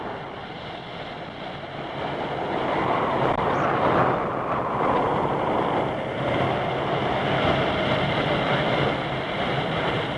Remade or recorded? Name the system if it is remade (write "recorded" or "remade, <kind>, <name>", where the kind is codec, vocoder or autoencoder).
remade, vocoder, BigVGAN v2